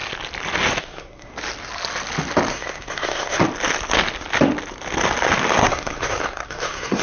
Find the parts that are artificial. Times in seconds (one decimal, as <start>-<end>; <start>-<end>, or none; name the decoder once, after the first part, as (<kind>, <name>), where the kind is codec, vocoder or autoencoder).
0.8-1.3 (codec, SNAC); 2.5-3.4; 5.6-7.0